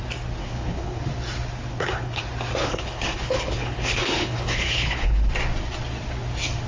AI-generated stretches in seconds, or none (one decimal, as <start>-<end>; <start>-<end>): 0.4-1.0; 1.7-2.2; 2.6-5.3